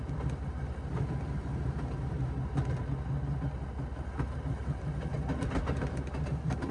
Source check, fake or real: real